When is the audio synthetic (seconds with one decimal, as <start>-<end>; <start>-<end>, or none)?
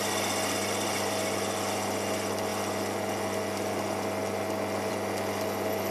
none